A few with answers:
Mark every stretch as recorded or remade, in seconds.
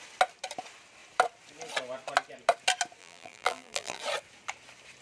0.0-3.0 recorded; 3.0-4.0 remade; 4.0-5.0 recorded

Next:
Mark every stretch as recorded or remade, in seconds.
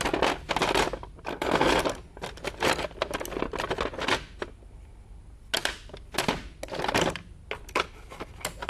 0.0-1.3 recorded; 1.3-1.8 remade; 1.8-8.7 recorded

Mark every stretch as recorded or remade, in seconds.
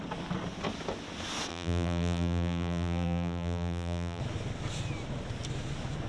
0.0-1.5 recorded; 1.5-4.2 remade; 4.2-6.1 recorded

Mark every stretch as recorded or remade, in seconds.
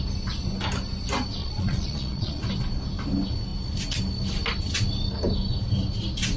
0.0-1.4 recorded; 1.4-2.4 remade; 2.4-6.4 recorded